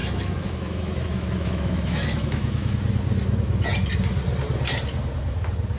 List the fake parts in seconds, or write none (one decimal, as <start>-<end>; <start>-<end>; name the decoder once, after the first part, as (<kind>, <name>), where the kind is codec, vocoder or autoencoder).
0.0-2.7 (autoencoder, DAC-VAE)